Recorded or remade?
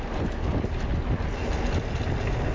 recorded